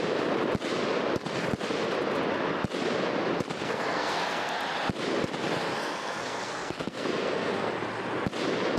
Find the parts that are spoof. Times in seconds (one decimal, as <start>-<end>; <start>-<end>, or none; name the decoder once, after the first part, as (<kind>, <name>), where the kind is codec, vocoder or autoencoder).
3.6-4.6 (codec, SNAC); 5.8-7.7